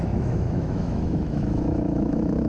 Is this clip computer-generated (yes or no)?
yes